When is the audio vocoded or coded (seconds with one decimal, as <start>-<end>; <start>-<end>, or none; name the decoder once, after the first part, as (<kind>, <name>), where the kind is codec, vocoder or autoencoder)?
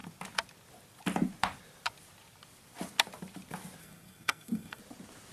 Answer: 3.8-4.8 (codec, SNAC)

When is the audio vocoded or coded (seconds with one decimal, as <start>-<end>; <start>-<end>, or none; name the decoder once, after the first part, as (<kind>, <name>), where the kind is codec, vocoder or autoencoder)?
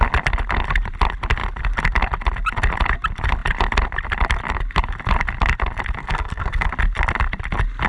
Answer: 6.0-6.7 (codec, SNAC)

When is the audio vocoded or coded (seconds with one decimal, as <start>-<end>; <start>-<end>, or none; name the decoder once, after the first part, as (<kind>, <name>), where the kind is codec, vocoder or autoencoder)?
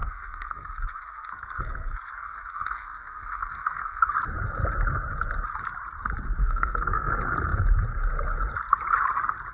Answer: 0.0-4.1 (codec, SNAC); 6.4-7.1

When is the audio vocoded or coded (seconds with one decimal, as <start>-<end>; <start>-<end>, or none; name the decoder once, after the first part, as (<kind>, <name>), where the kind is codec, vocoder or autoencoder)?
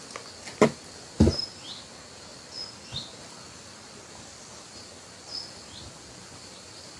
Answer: none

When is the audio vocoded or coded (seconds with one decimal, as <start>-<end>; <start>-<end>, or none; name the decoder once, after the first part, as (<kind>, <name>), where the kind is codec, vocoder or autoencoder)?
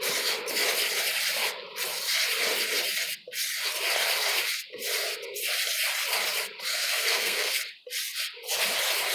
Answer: 6.7-7.6 (codec, SNAC)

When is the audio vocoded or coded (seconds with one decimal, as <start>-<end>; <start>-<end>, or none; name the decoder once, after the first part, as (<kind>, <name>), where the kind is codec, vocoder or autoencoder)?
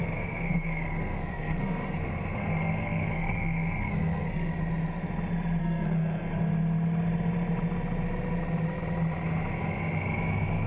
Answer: 0.0-4.5 (codec, SNAC); 5.6-6.3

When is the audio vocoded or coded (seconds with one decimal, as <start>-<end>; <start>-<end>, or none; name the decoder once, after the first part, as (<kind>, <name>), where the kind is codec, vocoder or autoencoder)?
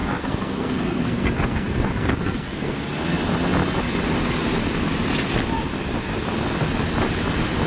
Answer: 0.0-2.8 (codec, SNAC)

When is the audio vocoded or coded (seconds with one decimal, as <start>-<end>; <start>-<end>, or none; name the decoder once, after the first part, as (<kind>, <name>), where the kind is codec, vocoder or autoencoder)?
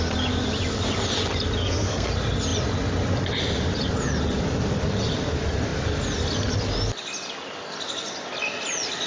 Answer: 1.6-2.1 (codec, SNAC)